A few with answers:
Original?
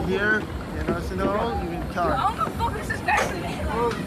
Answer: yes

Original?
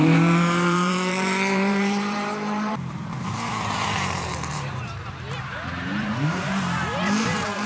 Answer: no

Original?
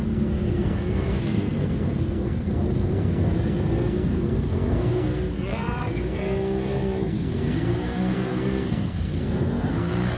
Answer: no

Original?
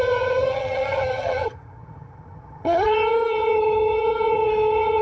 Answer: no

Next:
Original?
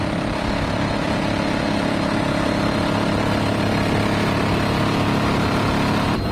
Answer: yes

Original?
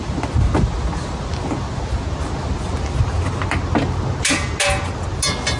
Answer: yes